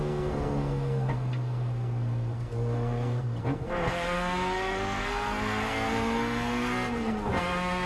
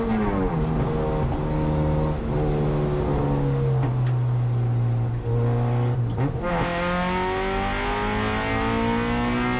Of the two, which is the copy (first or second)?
first